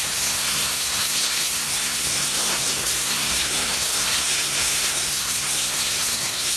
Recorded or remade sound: remade